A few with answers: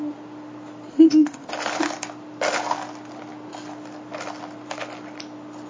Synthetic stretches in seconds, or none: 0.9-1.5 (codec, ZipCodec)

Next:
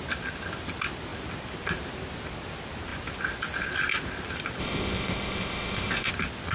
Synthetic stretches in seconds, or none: 4.6-6.1 (codec, ZipCodec)